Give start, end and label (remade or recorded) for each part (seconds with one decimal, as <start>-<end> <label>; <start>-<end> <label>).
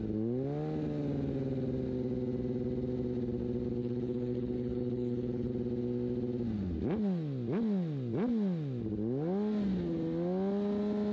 0.0-3.8 recorded; 3.8-5.5 remade; 5.5-11.1 recorded